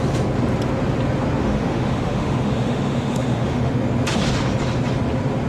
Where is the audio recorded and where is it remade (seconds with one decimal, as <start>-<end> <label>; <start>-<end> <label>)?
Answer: 0.0-1.4 recorded; 1.4-3.7 remade; 3.7-5.5 recorded

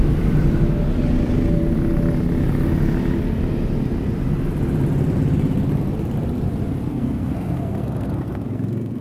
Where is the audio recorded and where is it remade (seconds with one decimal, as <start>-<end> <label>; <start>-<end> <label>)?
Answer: 0.0-6.9 recorded; 6.9-9.0 remade

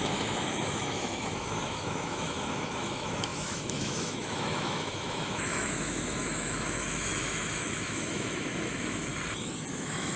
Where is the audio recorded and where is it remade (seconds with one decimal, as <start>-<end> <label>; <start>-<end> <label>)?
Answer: 0.0-9.1 remade; 9.1-9.7 recorded; 9.7-10.2 remade

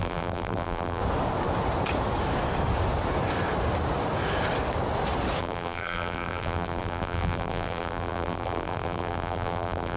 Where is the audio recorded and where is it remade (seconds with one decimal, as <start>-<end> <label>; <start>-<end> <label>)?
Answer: 0.0-1.0 remade; 1.0-5.4 recorded; 5.4-10.0 remade

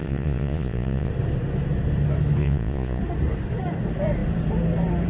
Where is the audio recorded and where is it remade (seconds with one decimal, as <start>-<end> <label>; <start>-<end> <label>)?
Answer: 0.0-1.1 remade; 1.1-2.4 recorded; 2.4-3.0 remade; 3.0-5.1 recorded

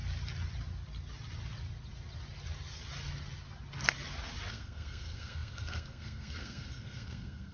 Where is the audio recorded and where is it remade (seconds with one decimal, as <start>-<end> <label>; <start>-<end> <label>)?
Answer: 0.0-4.5 recorded; 4.5-7.5 remade

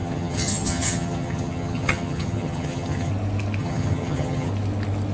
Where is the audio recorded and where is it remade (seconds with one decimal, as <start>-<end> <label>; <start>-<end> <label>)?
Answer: 0.0-3.1 remade; 3.1-3.6 recorded; 3.6-4.5 remade; 4.5-5.1 recorded

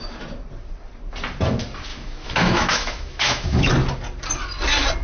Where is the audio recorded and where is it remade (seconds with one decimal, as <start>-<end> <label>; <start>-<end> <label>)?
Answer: 0.0-1.9 recorded; 1.9-3.7 remade; 3.7-5.0 recorded